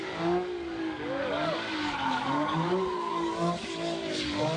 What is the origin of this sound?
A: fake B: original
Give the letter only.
A